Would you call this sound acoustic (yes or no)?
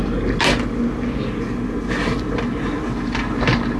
yes